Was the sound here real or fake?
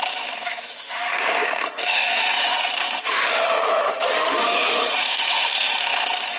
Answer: fake